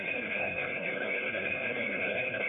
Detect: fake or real fake